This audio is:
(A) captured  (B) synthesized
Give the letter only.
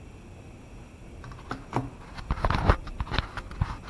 A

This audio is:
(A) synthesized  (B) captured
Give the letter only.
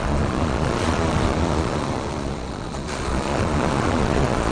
A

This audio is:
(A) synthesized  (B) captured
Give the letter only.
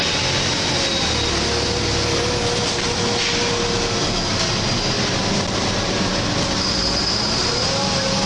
B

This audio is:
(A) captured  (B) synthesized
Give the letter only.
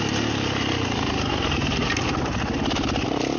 A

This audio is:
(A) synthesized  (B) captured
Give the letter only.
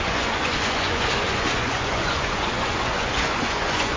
A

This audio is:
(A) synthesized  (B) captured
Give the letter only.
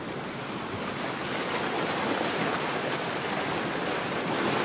B